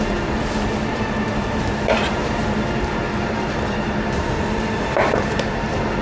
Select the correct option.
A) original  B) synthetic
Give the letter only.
B